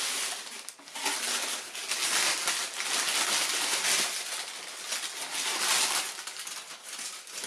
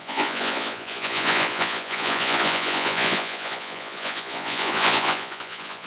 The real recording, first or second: first